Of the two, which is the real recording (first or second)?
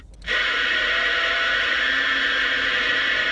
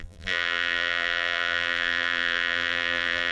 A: first